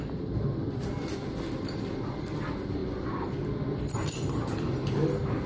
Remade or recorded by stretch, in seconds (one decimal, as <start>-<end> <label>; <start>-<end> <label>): 0.0-5.5 recorded